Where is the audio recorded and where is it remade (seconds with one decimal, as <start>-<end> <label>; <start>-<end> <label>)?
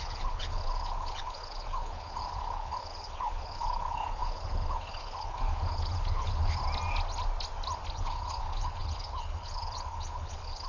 0.0-6.6 remade; 6.6-7.9 recorded; 7.9-10.7 remade